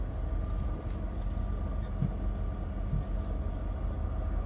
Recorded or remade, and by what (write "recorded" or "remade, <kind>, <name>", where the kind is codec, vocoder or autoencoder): recorded